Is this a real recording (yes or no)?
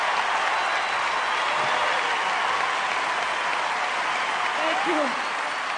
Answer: yes